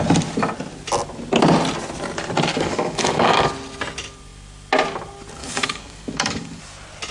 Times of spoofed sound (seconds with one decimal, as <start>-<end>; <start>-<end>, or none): 2.5-3.5; 5.4-6.6